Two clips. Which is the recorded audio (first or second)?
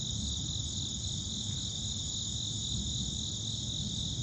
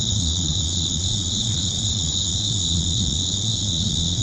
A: first